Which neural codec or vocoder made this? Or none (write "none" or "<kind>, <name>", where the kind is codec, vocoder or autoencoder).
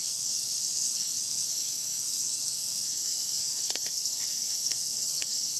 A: codec, SNAC